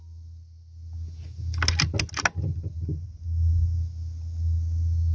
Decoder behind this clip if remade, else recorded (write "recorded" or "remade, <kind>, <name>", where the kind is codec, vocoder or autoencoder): recorded